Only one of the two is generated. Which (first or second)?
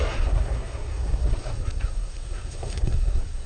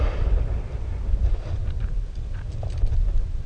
first